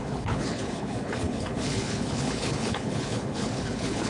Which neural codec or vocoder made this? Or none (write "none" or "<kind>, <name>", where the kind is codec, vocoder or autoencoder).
codec, HILCodec